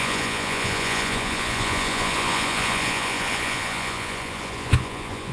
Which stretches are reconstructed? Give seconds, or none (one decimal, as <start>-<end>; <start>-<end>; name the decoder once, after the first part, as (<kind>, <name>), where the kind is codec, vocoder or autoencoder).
0.0-5.3 (vocoder, Vocos)